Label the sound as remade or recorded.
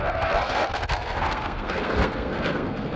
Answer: remade